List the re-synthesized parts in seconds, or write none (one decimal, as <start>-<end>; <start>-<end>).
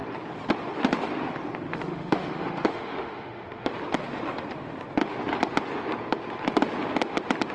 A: 1.7-3.7